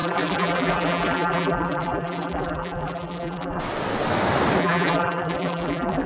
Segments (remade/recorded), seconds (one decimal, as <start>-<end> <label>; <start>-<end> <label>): 0.0-3.6 remade; 3.6-4.6 recorded; 4.6-6.1 remade